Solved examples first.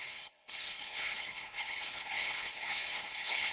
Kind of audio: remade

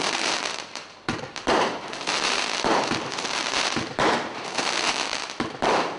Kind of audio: remade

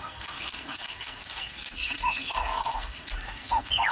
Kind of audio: remade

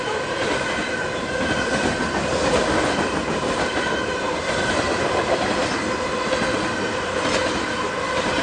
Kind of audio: recorded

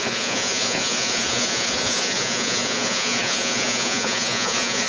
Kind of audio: remade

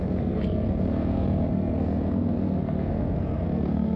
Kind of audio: remade